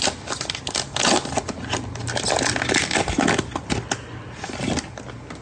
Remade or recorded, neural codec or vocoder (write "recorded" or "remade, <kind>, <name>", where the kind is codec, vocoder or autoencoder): recorded